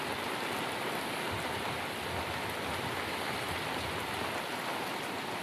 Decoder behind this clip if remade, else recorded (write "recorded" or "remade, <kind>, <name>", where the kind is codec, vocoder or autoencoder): recorded